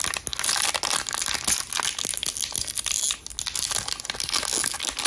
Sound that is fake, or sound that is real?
real